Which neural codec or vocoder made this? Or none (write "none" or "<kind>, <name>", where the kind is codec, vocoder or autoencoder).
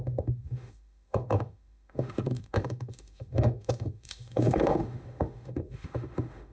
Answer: autoencoder, DAC-VAE